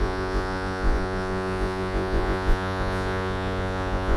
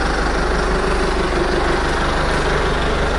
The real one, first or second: second